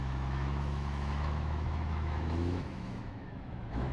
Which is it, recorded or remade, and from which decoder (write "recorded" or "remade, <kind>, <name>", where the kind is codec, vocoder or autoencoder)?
remade, autoencoder, DAC-VAE